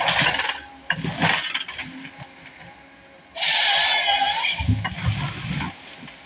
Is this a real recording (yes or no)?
yes